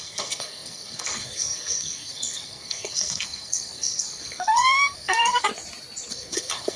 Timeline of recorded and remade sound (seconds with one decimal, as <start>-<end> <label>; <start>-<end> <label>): 0.0-5.5 remade; 5.5-6.1 recorded; 6.1-6.8 remade